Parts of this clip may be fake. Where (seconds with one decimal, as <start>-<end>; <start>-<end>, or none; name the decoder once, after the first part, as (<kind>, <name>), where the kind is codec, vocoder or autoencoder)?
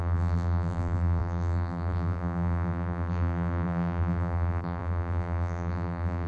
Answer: 0.0-6.3 (vocoder, BigVGAN v2)